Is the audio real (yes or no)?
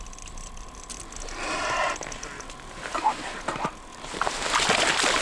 yes